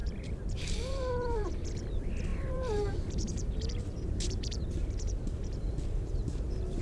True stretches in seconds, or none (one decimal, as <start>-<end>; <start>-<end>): 1.5-2.3